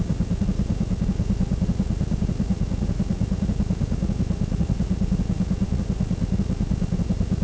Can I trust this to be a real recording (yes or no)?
no